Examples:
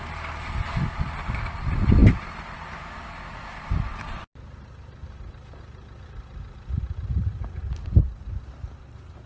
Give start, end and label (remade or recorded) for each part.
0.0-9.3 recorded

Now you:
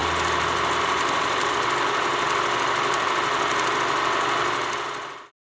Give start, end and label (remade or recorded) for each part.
0.0-5.5 recorded